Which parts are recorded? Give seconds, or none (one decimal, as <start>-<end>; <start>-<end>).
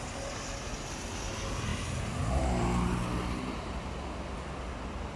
0.0-5.2